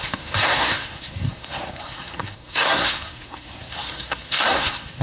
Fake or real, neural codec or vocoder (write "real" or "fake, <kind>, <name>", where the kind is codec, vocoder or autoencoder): fake, codec, SNAC